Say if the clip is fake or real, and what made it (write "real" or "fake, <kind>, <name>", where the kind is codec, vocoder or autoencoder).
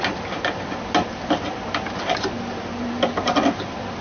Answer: real